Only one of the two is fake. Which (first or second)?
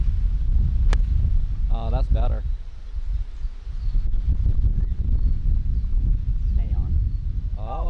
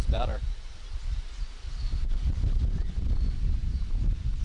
second